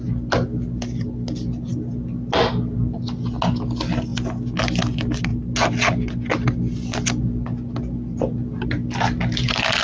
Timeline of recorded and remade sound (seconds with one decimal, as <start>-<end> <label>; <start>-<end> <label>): 0.0-9.8 recorded